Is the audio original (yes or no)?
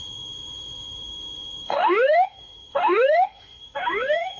no